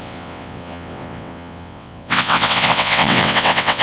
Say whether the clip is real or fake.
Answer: fake